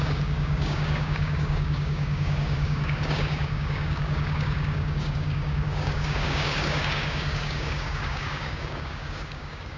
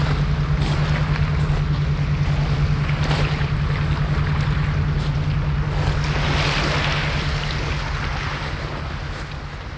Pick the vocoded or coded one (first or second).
first